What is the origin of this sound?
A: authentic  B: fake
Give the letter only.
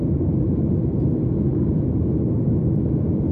A